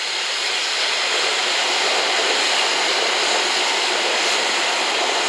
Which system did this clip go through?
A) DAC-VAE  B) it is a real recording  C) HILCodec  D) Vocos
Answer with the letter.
B